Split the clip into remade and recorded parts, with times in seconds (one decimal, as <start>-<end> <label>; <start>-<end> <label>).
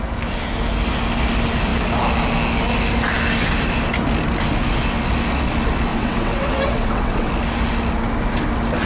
0.0-5.9 recorded; 5.9-7.3 remade; 7.3-8.9 recorded